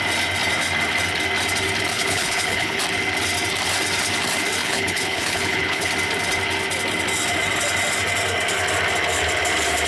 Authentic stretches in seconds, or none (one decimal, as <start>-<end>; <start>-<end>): 0.0-1.9; 2.8-4.6; 5.9-9.9